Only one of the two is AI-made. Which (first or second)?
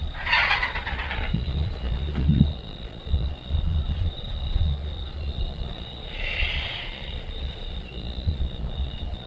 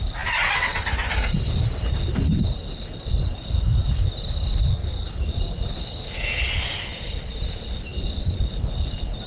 first